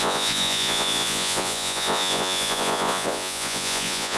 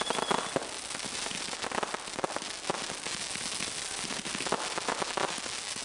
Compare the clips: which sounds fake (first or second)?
first